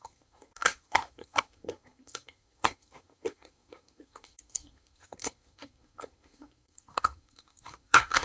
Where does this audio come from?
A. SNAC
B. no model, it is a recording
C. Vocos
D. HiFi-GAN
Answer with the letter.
A